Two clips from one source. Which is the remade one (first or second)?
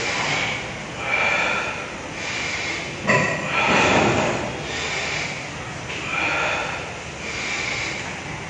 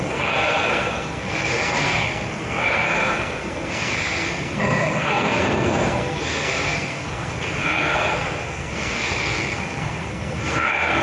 second